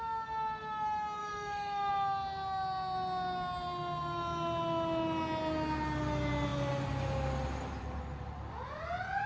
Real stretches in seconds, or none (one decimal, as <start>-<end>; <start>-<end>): 0.0-1.2; 1.9-9.3